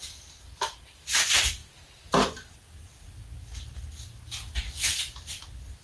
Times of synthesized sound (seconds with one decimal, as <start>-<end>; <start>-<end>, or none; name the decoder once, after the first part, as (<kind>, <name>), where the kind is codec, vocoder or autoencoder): none